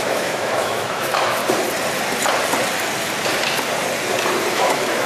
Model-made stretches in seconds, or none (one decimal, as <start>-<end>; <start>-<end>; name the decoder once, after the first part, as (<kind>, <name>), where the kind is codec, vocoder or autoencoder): 0.0-1.4 (autoencoder, DAC-VAE); 4.5-5.1

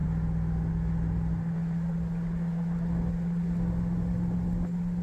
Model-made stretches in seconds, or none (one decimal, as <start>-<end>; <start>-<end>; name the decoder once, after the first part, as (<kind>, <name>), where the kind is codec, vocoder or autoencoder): none